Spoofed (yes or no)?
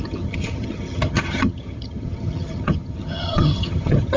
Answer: yes